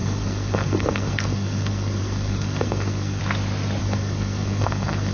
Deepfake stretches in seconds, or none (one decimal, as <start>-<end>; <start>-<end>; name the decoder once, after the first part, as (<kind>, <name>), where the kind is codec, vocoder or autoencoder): 0.0-3.2 (codec, SNAC); 3.8-5.1